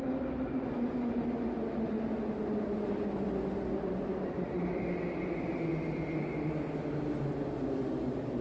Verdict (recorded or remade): recorded